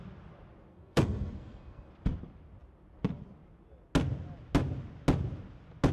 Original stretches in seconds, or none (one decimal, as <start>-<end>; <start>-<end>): 0.0-0.7; 1.9-5.9